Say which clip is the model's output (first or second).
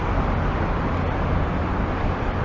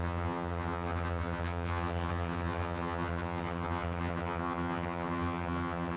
second